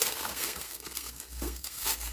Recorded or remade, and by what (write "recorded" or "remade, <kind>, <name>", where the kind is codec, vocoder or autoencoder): remade, codec, SNAC